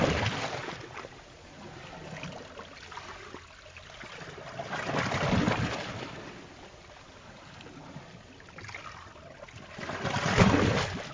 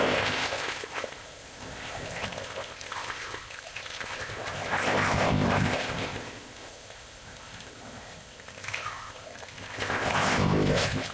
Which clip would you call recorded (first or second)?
first